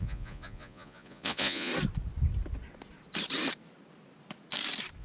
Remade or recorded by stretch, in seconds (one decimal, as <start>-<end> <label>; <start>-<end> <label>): 0.0-1.7 remade; 1.7-5.0 recorded

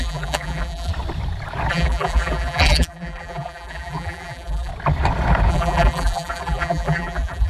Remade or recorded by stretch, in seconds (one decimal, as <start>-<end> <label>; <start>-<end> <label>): 0.0-0.9 remade; 0.9-1.7 recorded; 1.7-4.7 remade; 4.7-5.5 recorded; 5.5-7.5 remade

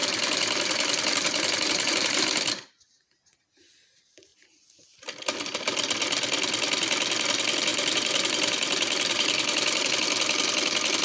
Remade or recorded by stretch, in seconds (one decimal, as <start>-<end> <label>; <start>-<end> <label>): 0.0-2.2 remade; 2.2-7.7 recorded; 7.7-9.9 remade; 9.9-11.0 recorded

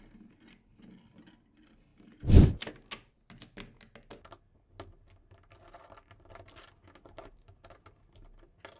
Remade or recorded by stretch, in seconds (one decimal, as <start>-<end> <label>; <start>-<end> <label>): 0.0-8.8 recorded